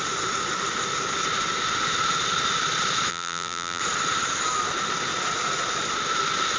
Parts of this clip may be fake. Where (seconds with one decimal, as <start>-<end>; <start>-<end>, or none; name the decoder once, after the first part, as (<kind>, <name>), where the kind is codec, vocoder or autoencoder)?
3.1-3.8 (vocoder, BigVGAN v2)